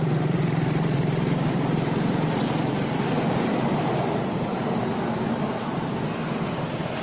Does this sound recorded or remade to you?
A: remade